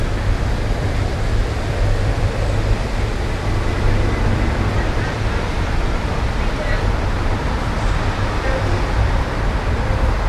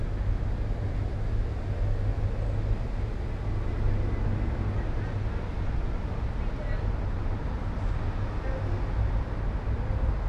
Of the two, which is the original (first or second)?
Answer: second